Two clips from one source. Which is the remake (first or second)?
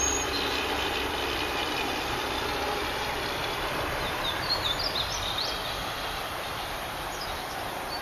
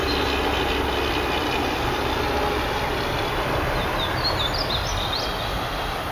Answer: first